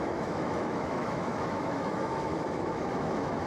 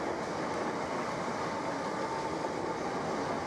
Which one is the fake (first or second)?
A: first